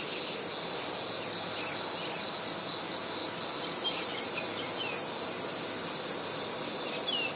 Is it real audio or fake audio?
real